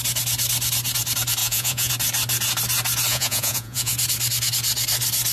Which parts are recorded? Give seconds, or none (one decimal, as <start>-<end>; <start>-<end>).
0.0-1.4; 1.9-3.1; 3.9-5.3